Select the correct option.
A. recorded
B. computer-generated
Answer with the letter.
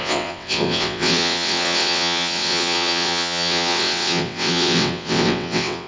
B